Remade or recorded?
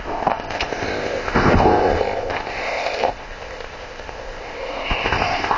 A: remade